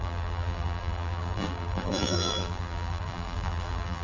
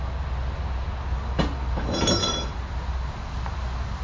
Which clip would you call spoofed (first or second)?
first